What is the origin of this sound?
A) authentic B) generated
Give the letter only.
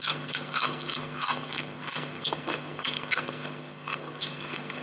B